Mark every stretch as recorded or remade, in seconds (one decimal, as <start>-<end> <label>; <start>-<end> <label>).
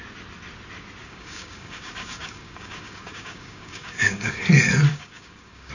0.0-1.0 recorded; 1.0-4.4 remade; 4.4-4.9 recorded; 4.9-5.7 remade